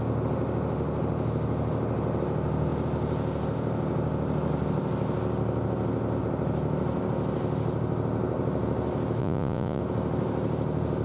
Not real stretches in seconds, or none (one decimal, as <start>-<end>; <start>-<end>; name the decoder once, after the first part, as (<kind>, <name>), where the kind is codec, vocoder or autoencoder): 9.2-9.8 (vocoder, Vocos)